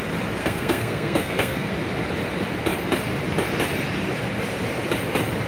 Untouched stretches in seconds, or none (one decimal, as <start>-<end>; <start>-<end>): 0.0-0.4; 1.7-5.5

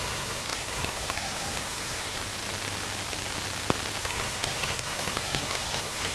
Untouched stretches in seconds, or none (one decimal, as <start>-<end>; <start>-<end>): 2.2-4.0

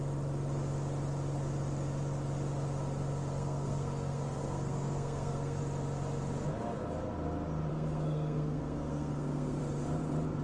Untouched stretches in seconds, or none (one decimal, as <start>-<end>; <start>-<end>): 0.0-3.3; 5.6-7.7; 9.6-10.4

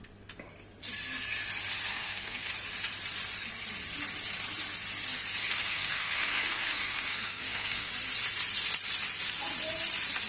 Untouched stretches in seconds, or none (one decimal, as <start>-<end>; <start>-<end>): 0.0-1.9; 2.5-5.4; 7.9-10.3